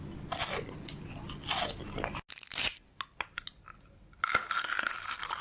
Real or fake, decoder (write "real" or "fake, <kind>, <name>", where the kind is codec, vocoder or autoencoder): real